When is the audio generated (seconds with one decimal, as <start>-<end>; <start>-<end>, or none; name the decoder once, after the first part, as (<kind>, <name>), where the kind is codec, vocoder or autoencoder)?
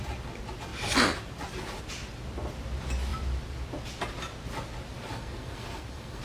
5.1-6.2 (codec, SNAC)